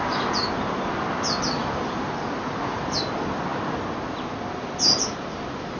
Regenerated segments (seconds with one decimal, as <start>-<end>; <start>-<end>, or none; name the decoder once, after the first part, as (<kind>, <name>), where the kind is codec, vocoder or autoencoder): 1.6-2.8 (vocoder, BigVGAN v2)